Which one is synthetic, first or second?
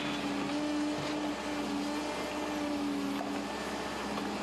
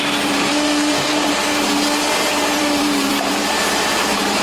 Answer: second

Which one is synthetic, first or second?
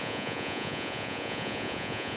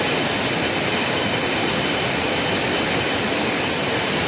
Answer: first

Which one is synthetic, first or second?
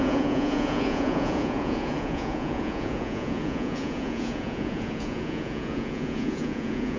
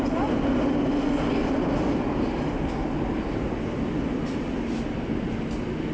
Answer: first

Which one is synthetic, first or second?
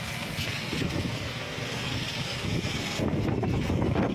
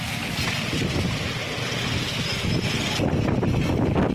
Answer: first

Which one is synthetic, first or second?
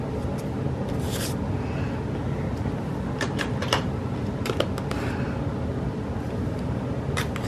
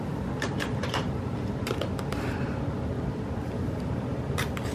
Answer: second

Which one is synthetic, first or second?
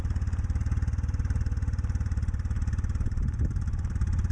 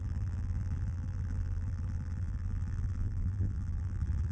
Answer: second